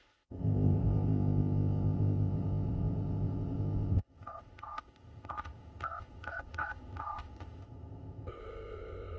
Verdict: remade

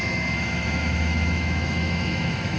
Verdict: remade